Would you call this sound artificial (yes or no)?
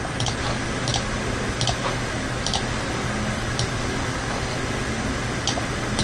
no